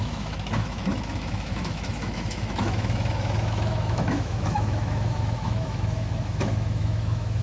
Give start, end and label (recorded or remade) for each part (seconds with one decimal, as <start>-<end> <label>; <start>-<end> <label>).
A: 0.0-7.4 remade